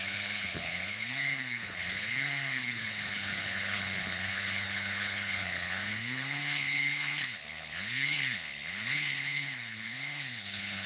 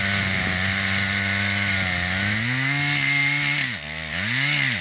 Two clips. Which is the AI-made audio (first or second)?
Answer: first